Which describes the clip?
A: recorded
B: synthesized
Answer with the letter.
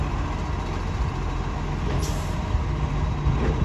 A